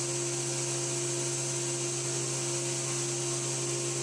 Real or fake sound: real